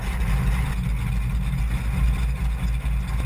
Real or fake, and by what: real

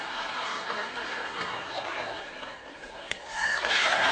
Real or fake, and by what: fake, codec, SNAC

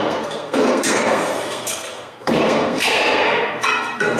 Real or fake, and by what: fake, codec, SNAC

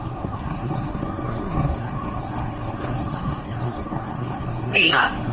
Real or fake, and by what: fake, codec, SNAC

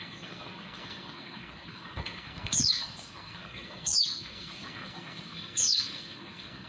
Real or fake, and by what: fake, codec, SNAC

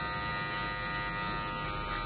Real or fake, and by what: real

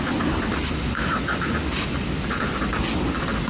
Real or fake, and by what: real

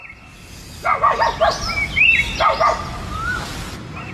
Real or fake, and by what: real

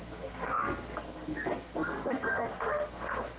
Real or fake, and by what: fake, codec, SNAC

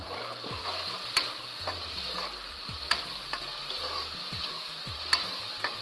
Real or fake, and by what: real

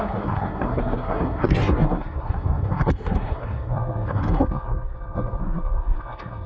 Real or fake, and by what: fake, codec, SNAC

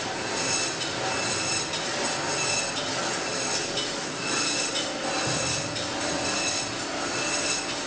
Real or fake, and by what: real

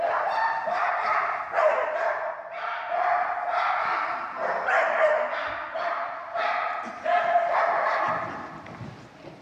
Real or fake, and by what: real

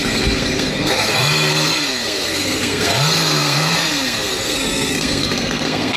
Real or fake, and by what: fake, codec, SNAC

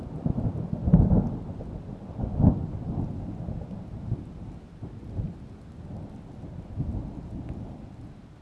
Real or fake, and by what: real